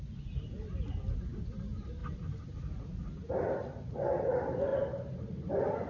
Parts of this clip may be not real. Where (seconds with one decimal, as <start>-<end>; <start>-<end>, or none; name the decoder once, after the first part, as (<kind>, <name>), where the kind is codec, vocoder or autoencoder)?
none